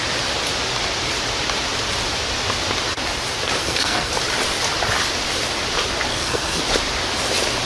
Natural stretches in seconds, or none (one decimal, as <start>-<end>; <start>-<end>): 0.0-3.6; 4.1-6.1; 6.6-7.6